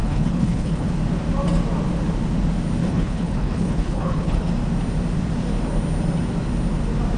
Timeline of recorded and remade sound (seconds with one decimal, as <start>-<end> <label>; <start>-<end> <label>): 0.0-0.9 remade; 0.9-2.8 recorded; 2.8-4.5 remade; 4.5-7.2 recorded